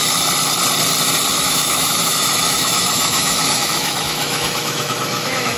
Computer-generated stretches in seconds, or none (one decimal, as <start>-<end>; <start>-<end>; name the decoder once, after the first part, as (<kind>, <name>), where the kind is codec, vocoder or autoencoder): 1.3-5.6 (autoencoder, DAC-VAE)